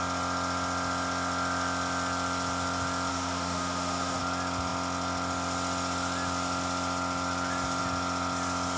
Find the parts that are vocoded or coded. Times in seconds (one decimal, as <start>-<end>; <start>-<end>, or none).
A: 3.1-4.2